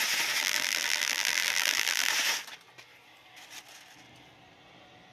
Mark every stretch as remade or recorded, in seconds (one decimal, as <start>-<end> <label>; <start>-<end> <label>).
0.0-0.4 recorded; 0.4-2.1 remade; 2.1-5.1 recorded